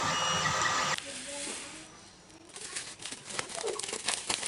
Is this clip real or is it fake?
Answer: real